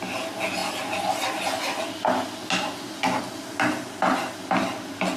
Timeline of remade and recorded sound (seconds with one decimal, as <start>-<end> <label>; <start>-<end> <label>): 0.0-5.2 recorded